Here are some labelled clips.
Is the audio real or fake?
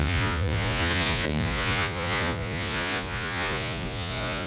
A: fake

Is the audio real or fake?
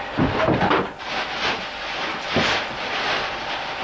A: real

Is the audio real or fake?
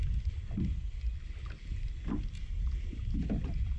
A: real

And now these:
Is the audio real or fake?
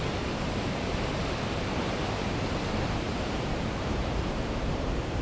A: fake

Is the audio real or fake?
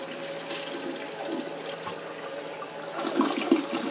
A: real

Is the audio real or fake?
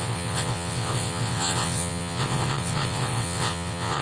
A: fake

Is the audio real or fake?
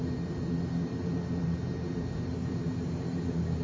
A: real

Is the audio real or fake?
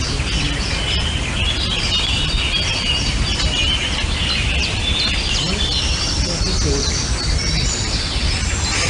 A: real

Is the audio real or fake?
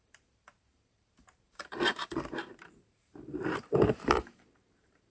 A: fake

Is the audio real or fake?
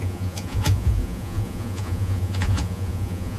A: fake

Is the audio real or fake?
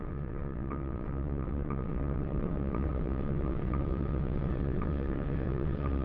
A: fake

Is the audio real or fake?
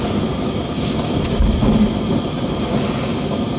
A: real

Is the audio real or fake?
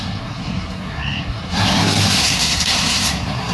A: fake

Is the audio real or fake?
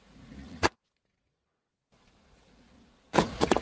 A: fake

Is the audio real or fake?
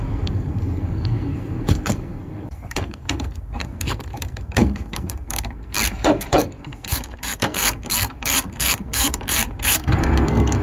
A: fake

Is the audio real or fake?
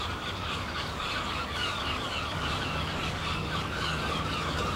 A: fake